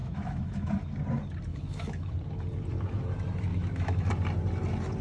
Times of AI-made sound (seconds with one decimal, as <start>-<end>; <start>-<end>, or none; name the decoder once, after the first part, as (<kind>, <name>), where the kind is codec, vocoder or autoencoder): 0.0-0.7 (autoencoder, DAC-VAE); 1.5-2.1; 3.5-4.1